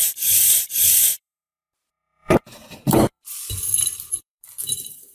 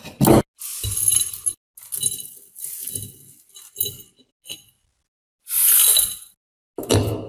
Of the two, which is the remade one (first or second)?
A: first